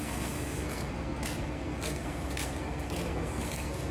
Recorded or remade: remade